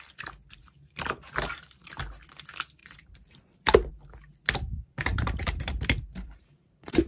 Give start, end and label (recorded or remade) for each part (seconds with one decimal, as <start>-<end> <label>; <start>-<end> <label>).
0.0-0.6 recorded; 0.6-2.0 remade; 2.0-2.8 recorded; 2.8-3.9 remade; 3.9-5.1 recorded; 5.1-7.1 remade